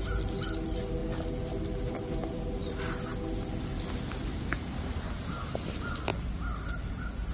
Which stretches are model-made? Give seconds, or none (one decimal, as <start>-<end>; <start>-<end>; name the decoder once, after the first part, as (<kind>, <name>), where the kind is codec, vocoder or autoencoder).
none